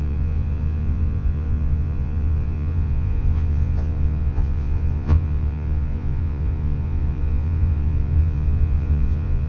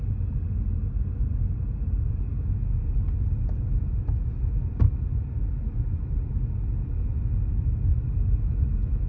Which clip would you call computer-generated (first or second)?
first